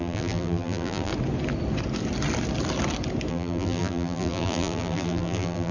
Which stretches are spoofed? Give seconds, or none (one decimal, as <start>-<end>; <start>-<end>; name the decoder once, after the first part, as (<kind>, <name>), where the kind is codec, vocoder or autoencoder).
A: 0.0-1.1 (vocoder, BigVGAN v2); 3.3-5.7